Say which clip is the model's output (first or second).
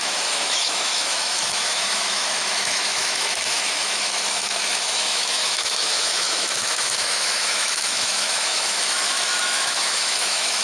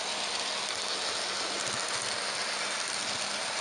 first